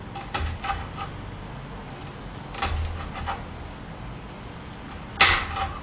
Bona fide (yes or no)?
yes